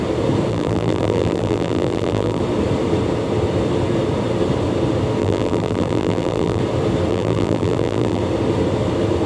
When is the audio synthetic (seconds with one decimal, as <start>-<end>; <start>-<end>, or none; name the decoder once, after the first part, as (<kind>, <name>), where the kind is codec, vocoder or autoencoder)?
0.5-2.4 (vocoder, BigVGAN v2); 5.2-6.6; 7.1-8.2